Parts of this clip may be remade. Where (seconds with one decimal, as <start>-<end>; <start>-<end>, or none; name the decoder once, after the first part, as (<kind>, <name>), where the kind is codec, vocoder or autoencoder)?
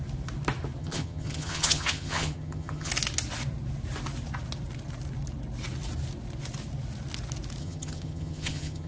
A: 0.8-2.9 (vocoder, HiFi-GAN); 7.6-8.9